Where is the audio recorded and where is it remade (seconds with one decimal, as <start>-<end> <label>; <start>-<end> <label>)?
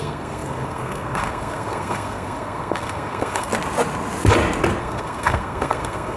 0.0-3.5 remade; 3.5-4.8 recorded; 4.8-6.2 remade